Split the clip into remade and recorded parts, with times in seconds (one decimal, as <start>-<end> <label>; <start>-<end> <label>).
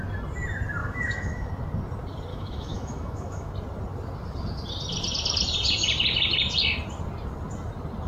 0.0-0.8 recorded; 0.8-1.5 remade; 1.5-2.3 recorded; 2.3-3.5 remade; 3.5-8.1 recorded